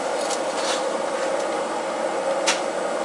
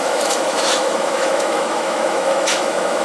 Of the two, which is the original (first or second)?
first